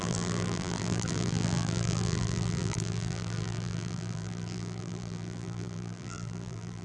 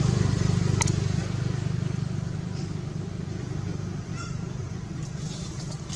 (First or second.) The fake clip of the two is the first